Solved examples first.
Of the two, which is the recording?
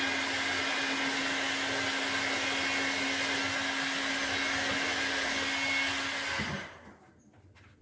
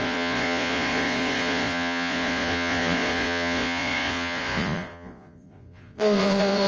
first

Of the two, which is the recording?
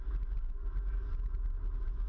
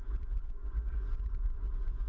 first